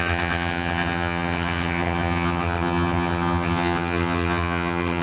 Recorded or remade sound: remade